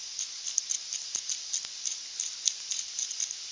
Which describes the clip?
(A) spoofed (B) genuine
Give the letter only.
B